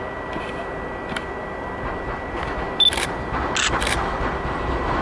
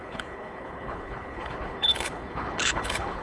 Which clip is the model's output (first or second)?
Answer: second